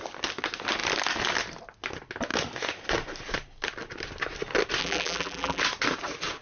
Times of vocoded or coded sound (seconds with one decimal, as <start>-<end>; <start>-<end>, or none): 4.8-5.6